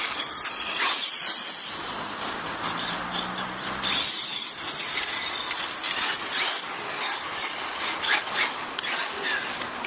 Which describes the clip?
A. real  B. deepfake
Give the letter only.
A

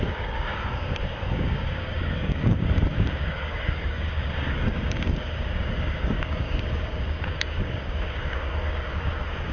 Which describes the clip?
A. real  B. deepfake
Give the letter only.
B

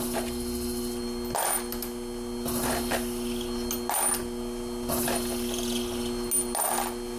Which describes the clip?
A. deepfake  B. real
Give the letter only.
B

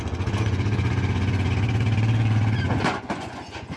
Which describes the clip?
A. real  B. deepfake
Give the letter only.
B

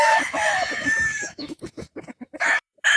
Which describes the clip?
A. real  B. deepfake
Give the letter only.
B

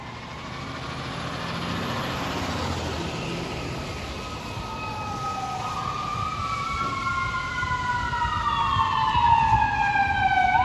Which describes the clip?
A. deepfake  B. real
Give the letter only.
B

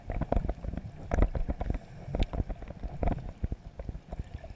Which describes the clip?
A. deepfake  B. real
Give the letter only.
B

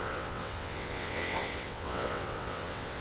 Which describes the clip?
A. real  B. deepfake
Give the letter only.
B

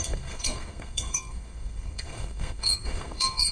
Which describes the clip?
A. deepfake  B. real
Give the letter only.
A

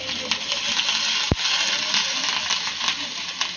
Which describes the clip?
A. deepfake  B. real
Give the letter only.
B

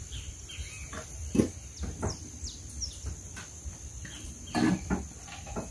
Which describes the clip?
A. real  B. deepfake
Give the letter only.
A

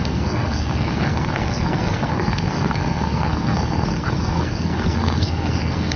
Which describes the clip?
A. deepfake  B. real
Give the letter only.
A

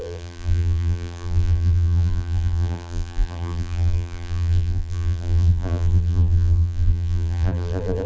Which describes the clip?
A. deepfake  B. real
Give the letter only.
A